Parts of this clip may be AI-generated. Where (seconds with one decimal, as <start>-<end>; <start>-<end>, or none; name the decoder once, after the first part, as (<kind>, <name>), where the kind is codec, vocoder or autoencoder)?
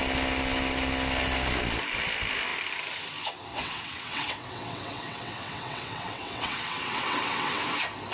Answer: 3.5-7.6 (vocoder, WaveNeXt)